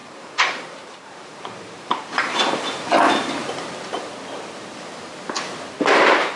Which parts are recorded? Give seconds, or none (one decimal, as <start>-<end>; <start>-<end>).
2.9-6.4